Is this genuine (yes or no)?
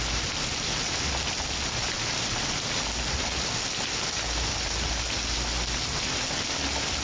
yes